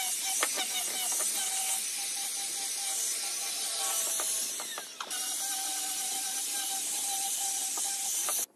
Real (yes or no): yes